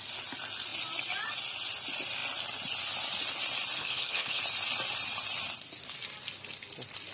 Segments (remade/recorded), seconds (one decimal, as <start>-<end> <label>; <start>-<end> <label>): 0.0-3.8 recorded; 3.8-4.4 remade; 4.4-7.1 recorded